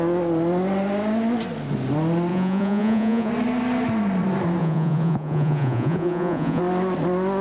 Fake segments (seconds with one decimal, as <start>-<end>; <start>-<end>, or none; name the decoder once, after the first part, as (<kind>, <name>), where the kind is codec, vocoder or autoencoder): 2.3-3.3 (vocoder, Vocos); 4.6-6.6